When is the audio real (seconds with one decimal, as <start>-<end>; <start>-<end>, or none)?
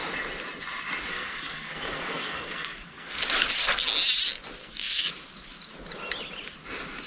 0.0-1.1; 3.2-4.6; 5.1-7.1